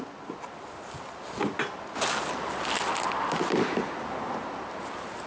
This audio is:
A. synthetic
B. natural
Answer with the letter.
B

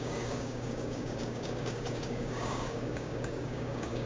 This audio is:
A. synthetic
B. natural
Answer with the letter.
A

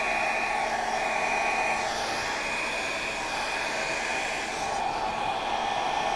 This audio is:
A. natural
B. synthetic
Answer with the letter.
A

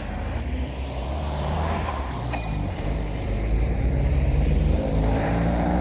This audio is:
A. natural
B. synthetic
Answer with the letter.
B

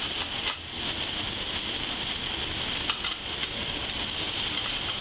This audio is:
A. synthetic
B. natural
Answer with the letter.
B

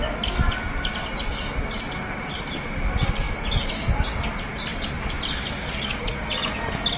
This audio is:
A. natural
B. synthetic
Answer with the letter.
A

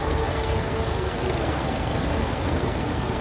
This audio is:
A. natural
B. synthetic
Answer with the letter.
B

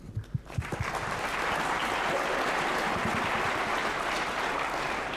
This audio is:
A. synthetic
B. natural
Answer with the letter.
B